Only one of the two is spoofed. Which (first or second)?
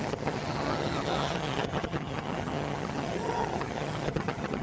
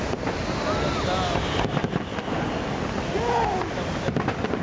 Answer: first